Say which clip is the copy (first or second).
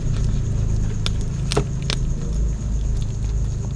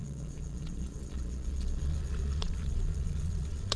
second